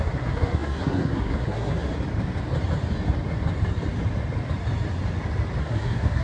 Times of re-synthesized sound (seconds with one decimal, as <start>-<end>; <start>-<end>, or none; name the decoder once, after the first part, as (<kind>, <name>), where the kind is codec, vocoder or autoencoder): 0.0-1.9 (codec, SNAC); 5.6-6.2